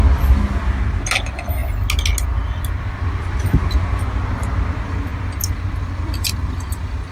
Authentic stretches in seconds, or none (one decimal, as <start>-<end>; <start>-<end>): 0.0-7.1